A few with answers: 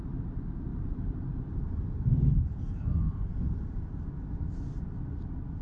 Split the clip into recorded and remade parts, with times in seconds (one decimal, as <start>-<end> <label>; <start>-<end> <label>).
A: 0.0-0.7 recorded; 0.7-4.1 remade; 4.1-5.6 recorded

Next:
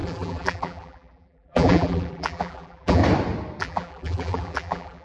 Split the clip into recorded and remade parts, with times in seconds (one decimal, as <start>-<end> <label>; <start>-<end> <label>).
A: 0.0-3.0 remade; 3.0-3.6 recorded; 3.6-5.0 remade

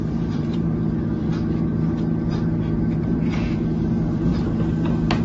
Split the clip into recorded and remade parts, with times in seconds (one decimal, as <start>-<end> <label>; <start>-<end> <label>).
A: 0.0-1.3 remade; 1.3-2.9 recorded; 2.9-4.3 remade; 4.3-5.2 recorded